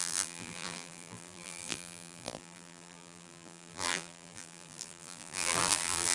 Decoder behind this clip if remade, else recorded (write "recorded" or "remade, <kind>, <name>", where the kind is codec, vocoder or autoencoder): remade, vocoder, BigVGAN v2